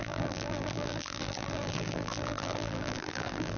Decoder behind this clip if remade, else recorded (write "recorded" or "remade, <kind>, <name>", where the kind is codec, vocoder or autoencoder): remade, vocoder, BigVGAN v2